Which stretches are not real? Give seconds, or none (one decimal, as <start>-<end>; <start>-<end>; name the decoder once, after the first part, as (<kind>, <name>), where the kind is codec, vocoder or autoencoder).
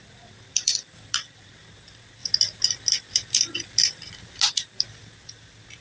0.0-1.6 (vocoder, BigVGAN v2); 2.2-4.4